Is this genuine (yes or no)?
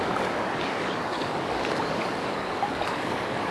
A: no